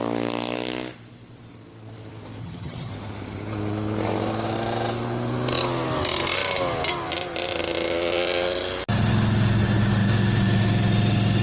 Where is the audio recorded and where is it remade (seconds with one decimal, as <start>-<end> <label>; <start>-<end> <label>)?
0.0-2.4 recorded; 2.4-2.9 remade; 2.9-11.4 recorded